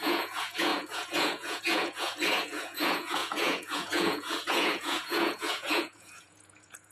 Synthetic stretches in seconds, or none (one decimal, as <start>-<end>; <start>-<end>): 0.0-6.9